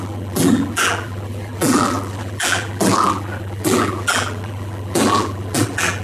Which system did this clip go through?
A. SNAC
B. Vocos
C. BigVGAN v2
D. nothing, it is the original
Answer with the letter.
C